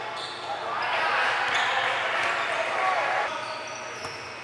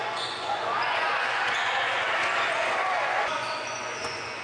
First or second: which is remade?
second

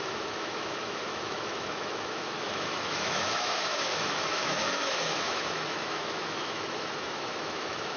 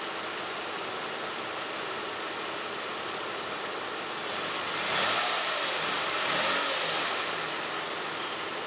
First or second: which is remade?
first